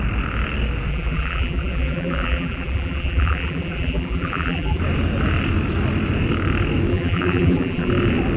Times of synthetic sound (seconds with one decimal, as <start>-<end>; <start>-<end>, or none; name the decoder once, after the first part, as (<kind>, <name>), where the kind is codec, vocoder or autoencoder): 0.9-4.8 (vocoder, BigVGAN v2); 6.9-7.9